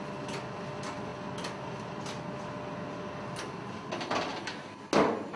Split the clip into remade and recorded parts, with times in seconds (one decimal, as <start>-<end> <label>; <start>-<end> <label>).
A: 0.0-5.4 recorded